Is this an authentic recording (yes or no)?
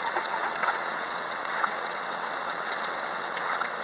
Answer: no